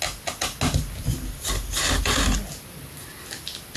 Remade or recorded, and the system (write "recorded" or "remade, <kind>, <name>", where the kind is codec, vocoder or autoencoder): recorded